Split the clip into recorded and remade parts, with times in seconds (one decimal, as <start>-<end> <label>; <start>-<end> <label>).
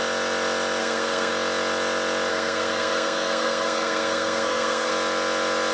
0.0-0.8 recorded; 0.8-1.3 remade; 1.3-2.3 recorded; 2.3-4.9 remade; 4.9-5.7 recorded